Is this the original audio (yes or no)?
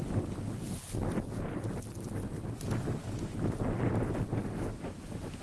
yes